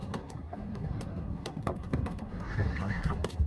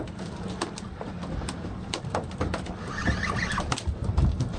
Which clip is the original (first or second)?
second